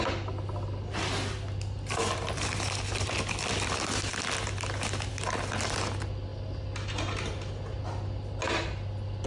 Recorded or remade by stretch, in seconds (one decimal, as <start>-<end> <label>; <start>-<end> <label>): 0.0-9.3 recorded